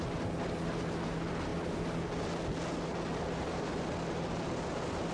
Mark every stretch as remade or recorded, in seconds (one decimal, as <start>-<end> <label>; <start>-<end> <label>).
0.0-5.1 recorded